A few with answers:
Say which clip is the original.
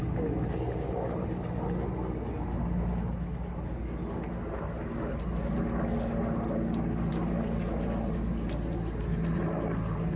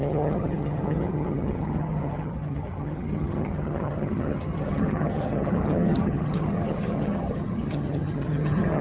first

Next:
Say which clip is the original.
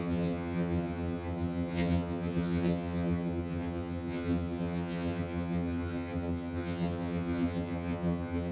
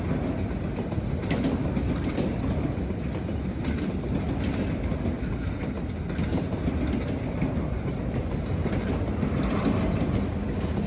second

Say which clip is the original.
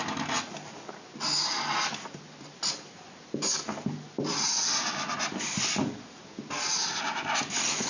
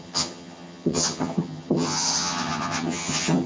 first